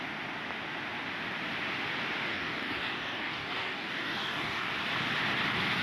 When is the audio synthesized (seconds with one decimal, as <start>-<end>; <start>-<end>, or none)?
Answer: 2.3-4.7